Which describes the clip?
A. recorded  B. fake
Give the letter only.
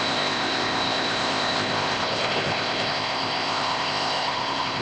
B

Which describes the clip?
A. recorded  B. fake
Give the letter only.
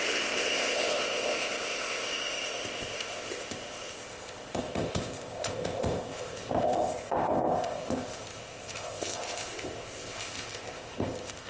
B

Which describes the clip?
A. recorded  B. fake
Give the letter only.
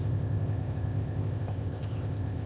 B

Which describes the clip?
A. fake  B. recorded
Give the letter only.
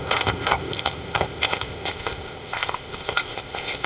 A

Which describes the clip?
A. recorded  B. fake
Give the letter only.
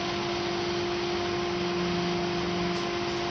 A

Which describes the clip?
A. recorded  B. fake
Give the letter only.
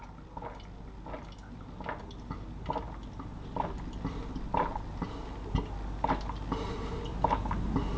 A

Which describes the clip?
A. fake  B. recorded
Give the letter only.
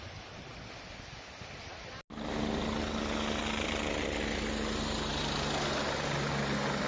B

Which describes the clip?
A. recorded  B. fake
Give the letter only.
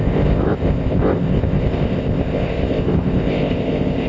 B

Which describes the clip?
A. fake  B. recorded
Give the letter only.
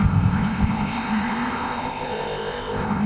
A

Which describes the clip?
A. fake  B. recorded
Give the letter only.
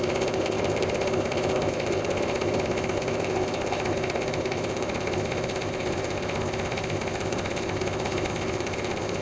A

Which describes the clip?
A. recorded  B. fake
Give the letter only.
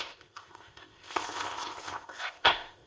B